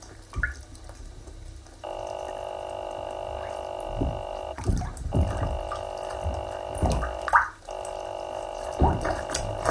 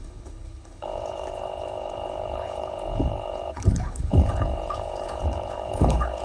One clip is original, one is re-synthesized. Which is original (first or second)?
first